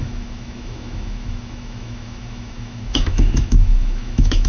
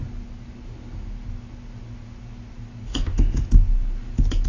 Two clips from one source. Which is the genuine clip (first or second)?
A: second